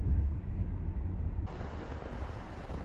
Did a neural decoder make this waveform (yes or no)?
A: no